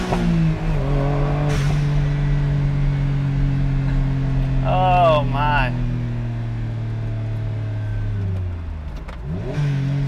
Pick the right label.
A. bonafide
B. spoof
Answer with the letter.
A